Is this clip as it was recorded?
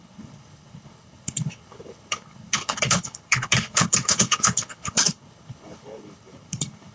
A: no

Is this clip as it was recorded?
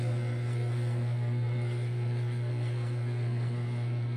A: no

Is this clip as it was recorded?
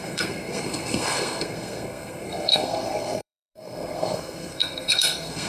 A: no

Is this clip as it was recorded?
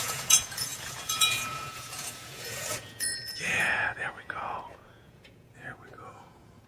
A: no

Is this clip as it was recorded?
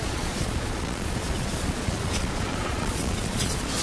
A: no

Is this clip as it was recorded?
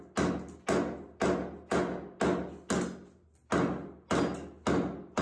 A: yes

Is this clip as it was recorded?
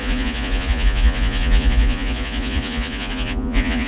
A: no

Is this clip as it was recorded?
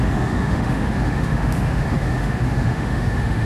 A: no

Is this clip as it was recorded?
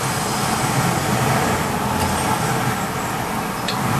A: yes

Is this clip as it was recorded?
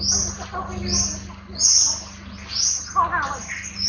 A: yes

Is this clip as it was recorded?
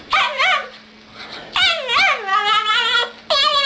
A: yes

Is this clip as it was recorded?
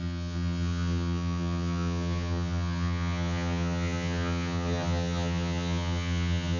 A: no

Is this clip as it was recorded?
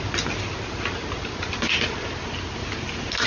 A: yes